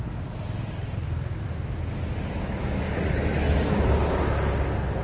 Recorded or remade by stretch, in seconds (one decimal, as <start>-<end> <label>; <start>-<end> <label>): 0.0-2.6 recorded; 2.6-3.1 remade; 3.1-5.0 recorded